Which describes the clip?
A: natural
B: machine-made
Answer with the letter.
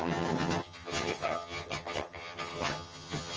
B